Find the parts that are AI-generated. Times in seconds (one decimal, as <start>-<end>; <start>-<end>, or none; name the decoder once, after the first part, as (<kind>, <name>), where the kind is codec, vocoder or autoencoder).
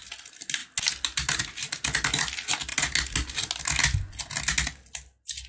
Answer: none